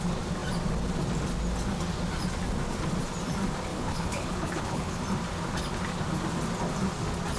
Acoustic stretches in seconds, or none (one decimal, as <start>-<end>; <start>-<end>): 0.0-3.7; 5.0-7.4